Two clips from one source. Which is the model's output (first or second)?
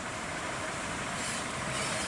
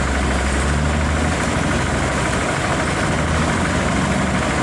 first